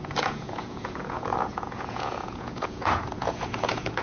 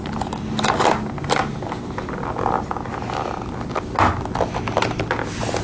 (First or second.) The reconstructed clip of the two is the first